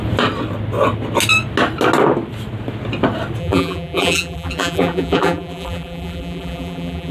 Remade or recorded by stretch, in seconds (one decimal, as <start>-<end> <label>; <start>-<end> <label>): 0.0-3.4 recorded; 3.4-7.1 remade